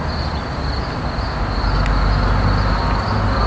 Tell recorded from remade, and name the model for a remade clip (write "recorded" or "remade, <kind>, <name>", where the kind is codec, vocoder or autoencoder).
recorded